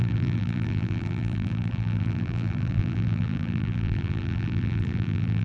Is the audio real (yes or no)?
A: no